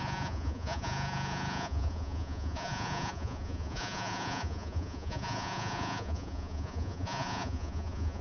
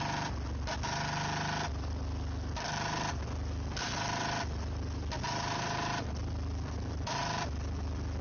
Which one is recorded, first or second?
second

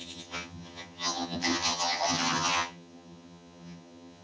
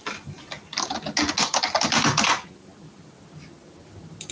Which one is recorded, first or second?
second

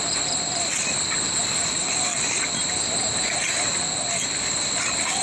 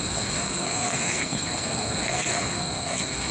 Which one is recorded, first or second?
first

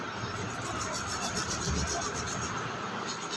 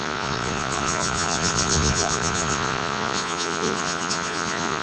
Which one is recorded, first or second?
first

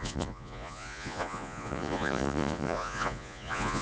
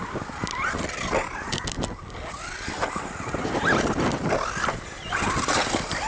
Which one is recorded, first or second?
second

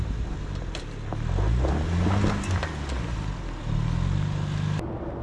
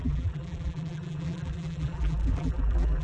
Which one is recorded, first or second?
first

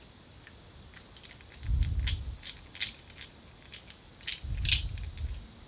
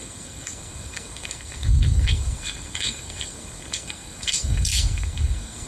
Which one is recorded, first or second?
first